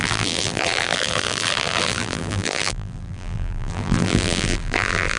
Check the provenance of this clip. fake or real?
fake